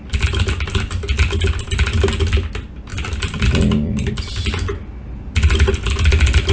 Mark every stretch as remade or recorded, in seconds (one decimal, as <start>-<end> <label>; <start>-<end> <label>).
0.0-6.5 recorded